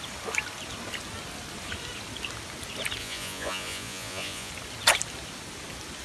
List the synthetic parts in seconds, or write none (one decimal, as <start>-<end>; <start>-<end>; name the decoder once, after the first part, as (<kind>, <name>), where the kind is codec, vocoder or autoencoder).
3.0-4.5 (vocoder, Vocos)